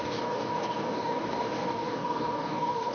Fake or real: fake